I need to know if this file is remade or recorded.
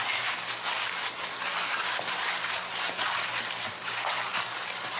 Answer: recorded